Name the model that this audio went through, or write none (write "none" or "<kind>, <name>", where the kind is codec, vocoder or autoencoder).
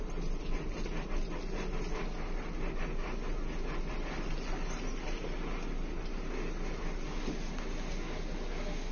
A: none